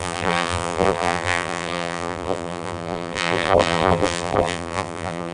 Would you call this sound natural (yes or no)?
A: no